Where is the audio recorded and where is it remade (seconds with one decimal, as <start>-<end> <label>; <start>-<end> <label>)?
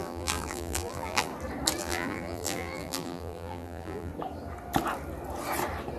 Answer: 0.0-1.3 remade; 1.3-1.8 recorded; 1.8-4.1 remade; 4.1-6.0 recorded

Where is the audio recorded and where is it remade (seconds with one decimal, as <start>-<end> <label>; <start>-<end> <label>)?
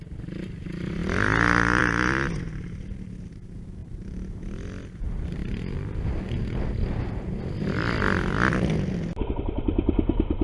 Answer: 0.0-5.4 recorded; 5.4-6.2 remade; 6.2-10.4 recorded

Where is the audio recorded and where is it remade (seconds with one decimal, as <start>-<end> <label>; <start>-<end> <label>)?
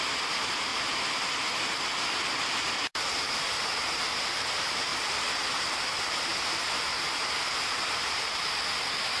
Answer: 0.0-0.7 remade; 0.7-2.7 recorded; 2.7-4.9 remade; 4.9-6.0 recorded; 6.0-9.2 remade